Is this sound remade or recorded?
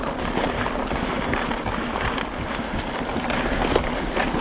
recorded